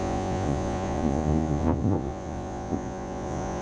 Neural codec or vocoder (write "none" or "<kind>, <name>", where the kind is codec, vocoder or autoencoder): vocoder, Vocos